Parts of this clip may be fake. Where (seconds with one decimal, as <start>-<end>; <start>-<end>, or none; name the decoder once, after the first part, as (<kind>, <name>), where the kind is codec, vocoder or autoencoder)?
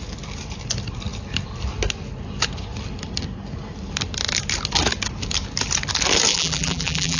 6.3-7.2 (vocoder, BigVGAN v2)